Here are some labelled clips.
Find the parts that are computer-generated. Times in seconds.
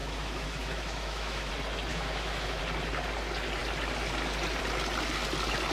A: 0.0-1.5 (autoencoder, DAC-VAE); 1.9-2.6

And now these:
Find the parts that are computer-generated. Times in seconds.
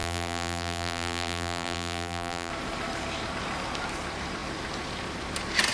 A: 0.0-2.5 (vocoder, BigVGAN v2)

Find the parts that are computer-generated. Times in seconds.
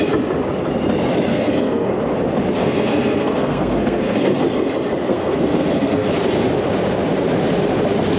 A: 1.3-2.0 (codec, SNAC); 2.6-4.4; 5.1-6.1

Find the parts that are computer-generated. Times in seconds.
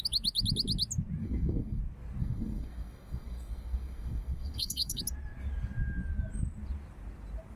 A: 1.2-1.8 (codec, SNAC); 2.2-5.0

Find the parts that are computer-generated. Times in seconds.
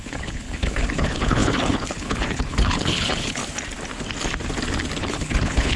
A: 0.0-3.4 (codec, HILCodec); 5.0-5.8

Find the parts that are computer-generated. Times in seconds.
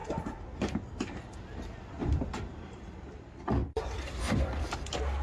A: 0.0-0.6 (vocoder, BigVGAN v2); 2.0-2.7; 3.6-4.6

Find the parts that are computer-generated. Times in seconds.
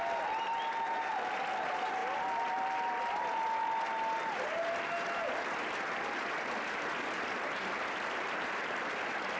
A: none